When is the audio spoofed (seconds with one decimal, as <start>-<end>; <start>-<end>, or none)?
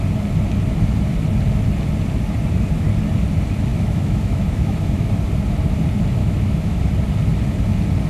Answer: 3.7-5.1; 6.2-6.8